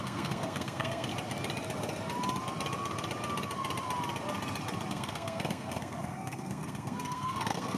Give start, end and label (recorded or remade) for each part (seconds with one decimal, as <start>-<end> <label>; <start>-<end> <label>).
0.0-1.1 remade; 1.1-4.9 recorded; 4.9-7.8 remade